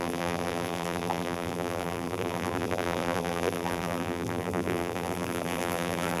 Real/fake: fake